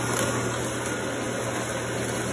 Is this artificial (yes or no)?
no